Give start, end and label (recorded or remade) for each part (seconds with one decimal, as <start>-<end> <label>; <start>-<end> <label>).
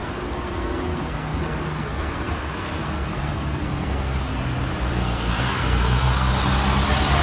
0.0-4.3 remade; 4.3-4.9 recorded; 4.9-6.3 remade; 6.3-7.2 recorded